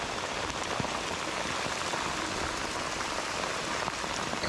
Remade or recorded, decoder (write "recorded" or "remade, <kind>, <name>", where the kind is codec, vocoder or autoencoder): recorded